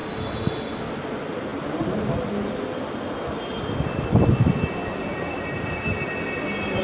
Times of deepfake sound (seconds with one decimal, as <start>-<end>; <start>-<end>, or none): none